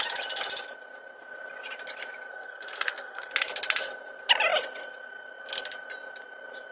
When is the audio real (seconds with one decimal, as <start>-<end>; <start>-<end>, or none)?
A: 0.0-2.3; 3.3-6.7